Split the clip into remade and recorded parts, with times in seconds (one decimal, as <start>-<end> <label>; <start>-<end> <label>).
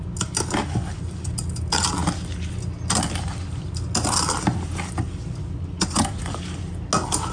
0.0-7.3 recorded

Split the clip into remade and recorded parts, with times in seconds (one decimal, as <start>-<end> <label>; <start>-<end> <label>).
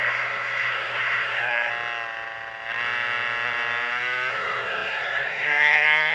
0.0-1.7 remade; 1.7-4.3 recorded; 4.3-6.1 remade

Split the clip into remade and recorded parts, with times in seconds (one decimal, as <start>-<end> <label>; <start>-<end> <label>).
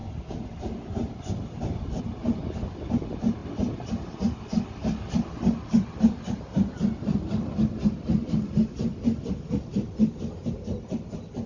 0.0-11.5 recorded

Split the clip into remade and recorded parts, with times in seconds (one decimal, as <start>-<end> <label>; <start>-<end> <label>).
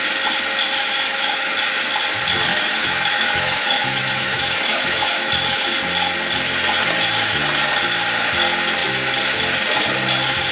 0.0-0.8 recorded; 0.8-1.5 remade; 1.5-2.5 recorded; 2.5-5.3 remade; 5.3-10.5 recorded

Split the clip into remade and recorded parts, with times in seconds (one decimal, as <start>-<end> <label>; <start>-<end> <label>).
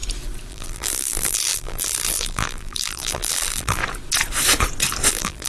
0.0-0.5 recorded; 0.5-3.8 remade; 3.8-5.1 recorded; 5.1-5.5 remade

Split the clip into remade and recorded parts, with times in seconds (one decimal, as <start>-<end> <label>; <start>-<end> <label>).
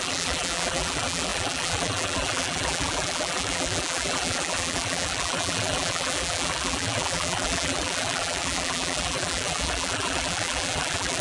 0.0-11.2 remade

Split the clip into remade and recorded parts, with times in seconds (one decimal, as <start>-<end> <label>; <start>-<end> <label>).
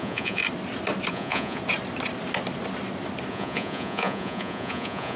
0.0-0.4 remade; 0.4-1.1 recorded; 1.1-1.6 remade; 1.6-3.3 recorded; 3.3-5.2 remade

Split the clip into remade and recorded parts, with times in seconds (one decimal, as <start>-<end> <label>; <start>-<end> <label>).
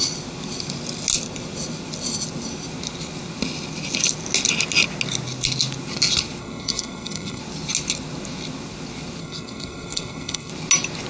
0.0-6.4 recorded; 6.4-7.4 remade; 7.4-9.2 recorded; 9.2-10.5 remade; 10.5-11.1 recorded